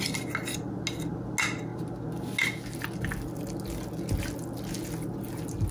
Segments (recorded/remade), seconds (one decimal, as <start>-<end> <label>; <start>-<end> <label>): 0.0-5.7 recorded